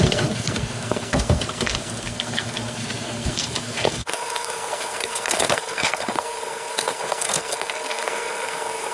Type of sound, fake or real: fake